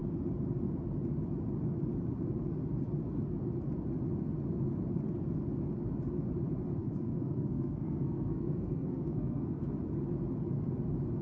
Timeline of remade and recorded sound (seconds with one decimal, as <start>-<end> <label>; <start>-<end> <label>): 0.0-6.8 recorded; 6.8-9.6 remade; 9.6-11.2 recorded